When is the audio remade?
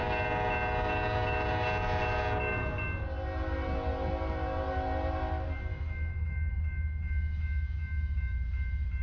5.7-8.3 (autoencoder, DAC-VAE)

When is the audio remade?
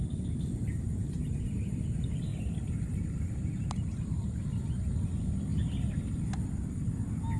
none